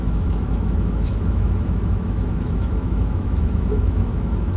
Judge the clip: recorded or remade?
remade